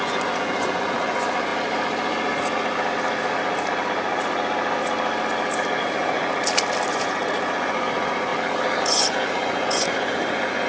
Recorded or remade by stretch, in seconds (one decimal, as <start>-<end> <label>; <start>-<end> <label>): 0.0-1.5 remade; 1.5-5.8 recorded; 5.8-6.2 remade; 6.2-6.9 recorded; 6.9-8.3 remade; 8.3-8.8 recorded; 8.8-10.7 remade